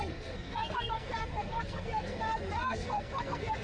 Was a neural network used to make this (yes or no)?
yes